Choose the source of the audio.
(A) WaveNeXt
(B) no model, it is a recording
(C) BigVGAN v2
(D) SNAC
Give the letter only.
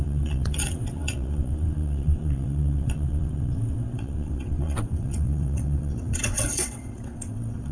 A